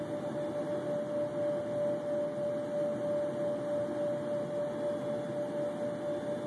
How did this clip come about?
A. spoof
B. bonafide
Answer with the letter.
B